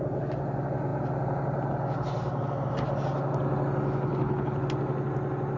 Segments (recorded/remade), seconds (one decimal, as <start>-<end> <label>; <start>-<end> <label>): 0.0-4.1 recorded; 4.1-4.6 remade; 4.6-5.6 recorded